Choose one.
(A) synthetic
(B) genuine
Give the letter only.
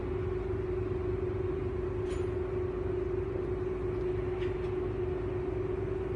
B